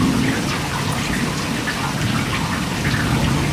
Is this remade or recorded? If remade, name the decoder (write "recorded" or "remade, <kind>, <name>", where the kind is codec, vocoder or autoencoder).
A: recorded